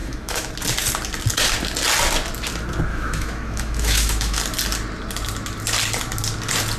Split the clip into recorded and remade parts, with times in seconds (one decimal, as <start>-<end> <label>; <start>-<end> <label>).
0.0-0.5 remade; 0.5-2.9 recorded; 2.9-4.4 remade; 4.4-6.8 recorded